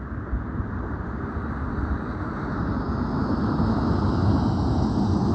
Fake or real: real